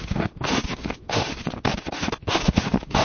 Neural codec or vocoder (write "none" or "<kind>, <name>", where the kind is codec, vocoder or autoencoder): autoencoder, DAC-VAE